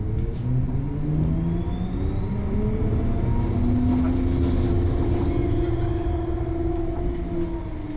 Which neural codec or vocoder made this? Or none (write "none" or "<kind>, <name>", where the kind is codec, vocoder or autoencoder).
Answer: none